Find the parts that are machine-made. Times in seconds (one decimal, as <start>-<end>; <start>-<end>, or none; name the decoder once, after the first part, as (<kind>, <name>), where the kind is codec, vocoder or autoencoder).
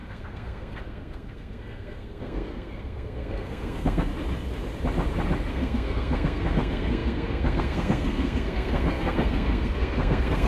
0.0-4.1 (codec, SNAC); 5.5-10.5